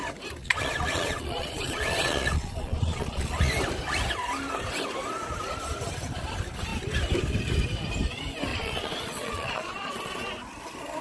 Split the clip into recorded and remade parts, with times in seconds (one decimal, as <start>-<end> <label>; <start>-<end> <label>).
0.0-0.4 recorded; 0.4-3.5 remade; 3.5-8.5 recorded; 8.5-10.2 remade; 10.2-11.0 recorded